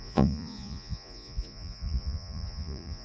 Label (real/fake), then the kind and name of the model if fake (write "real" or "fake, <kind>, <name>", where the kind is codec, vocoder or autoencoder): fake, vocoder, Vocos